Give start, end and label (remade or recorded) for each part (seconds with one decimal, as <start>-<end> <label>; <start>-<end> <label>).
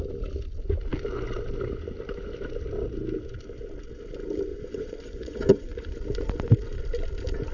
0.0-4.5 recorded; 4.5-5.9 remade; 5.9-7.5 recorded